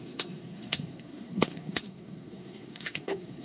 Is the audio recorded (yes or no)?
no